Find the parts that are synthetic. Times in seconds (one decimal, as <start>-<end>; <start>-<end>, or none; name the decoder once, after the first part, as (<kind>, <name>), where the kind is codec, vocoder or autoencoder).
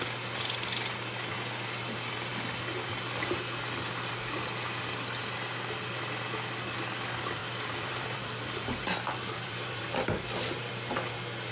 7.4-10.7 (vocoder, BigVGAN v2)